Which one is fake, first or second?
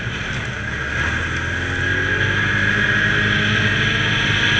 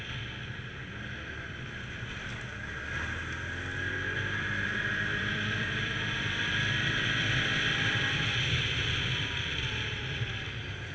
second